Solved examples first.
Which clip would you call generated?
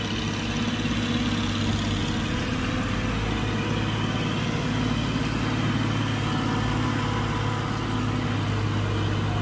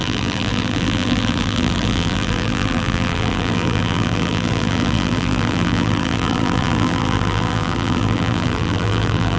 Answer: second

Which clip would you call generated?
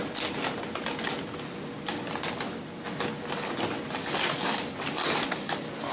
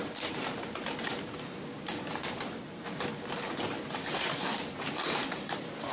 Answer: second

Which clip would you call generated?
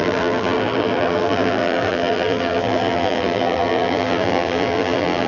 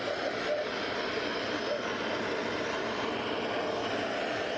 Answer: first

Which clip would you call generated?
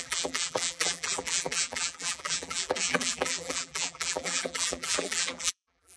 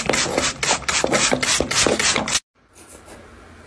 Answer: first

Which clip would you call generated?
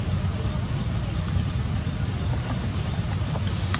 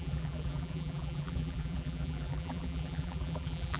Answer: second